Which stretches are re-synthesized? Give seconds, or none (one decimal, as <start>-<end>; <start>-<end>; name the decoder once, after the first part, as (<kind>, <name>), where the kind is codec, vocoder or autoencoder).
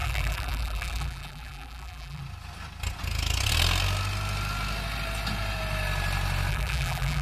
0.0-2.2 (vocoder, BigVGAN v2); 6.5-7.2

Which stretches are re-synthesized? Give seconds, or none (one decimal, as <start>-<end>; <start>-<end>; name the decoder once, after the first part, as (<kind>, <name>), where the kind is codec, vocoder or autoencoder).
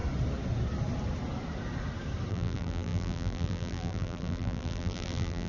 2.3-5.5 (vocoder, BigVGAN v2)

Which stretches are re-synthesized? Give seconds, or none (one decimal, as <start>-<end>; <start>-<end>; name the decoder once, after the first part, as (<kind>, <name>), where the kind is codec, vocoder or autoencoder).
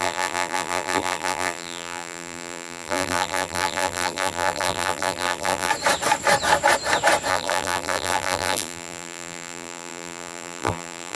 0.0-5.7 (vocoder, BigVGAN v2); 7.3-11.1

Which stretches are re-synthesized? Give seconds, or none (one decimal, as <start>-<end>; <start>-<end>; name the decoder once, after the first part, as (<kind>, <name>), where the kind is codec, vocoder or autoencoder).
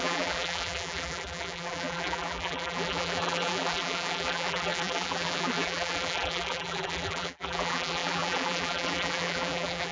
0.0-9.9 (vocoder, BigVGAN v2)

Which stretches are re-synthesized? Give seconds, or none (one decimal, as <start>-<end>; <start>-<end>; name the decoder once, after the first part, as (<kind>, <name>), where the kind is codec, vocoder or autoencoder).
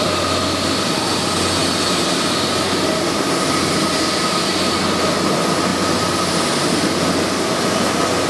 none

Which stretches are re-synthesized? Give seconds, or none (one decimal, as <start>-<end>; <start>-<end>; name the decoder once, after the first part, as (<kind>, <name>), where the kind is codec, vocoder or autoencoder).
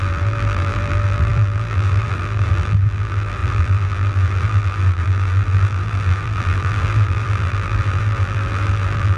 0.0-9.2 (vocoder, BigVGAN v2)